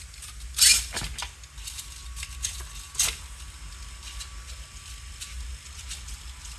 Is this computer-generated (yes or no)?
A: no